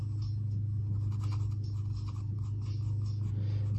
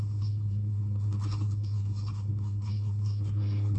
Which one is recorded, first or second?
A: first